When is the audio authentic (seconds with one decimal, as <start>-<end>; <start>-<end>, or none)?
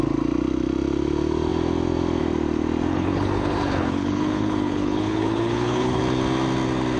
0.0-2.9; 6.0-7.0